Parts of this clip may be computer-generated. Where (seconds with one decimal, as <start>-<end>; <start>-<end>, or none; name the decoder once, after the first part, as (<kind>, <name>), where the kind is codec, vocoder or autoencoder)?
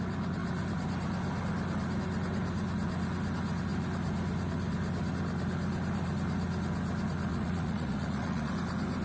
7.3-8.5 (vocoder, Vocos)